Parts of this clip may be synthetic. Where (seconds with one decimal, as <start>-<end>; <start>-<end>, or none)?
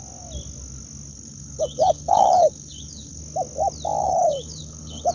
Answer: 1.1-3.2; 4.0-5.1